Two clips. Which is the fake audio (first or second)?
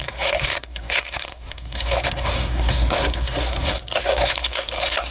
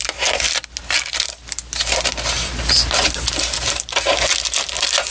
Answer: first